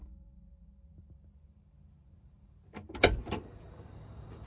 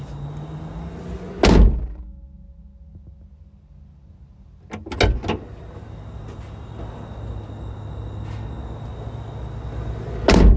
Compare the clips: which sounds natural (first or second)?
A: second